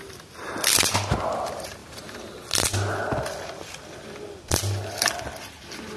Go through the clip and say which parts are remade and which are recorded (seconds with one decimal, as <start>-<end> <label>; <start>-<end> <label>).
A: 0.0-6.0 recorded